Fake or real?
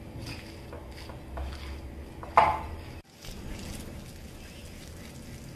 real